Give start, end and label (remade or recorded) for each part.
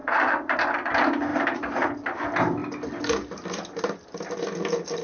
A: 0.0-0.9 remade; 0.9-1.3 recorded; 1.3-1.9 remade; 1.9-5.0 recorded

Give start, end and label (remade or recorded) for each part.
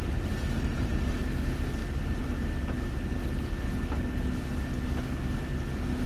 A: 0.0-0.9 remade; 0.9-6.1 recorded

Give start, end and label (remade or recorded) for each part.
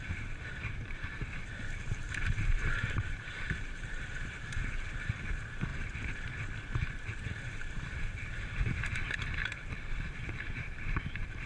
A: 0.0-5.7 remade; 5.7-6.9 recorded; 6.9-11.5 remade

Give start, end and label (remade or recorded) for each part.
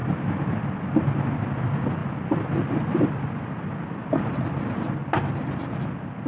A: 0.0-2.0 recorded; 2.0-3.5 remade; 3.5-6.3 recorded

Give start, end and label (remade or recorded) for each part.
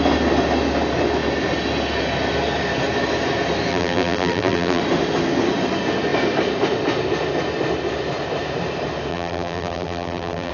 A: 0.0-3.7 recorded; 3.7-4.8 remade; 4.8-9.1 recorded; 9.1-10.5 remade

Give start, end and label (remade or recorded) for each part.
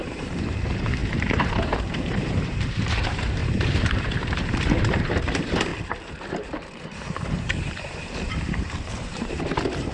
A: 0.0-3.4 remade; 3.4-3.9 recorded; 3.9-9.9 remade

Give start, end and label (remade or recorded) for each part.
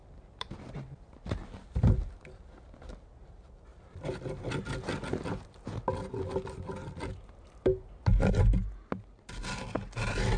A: 0.0-2.1 remade; 2.1-10.4 recorded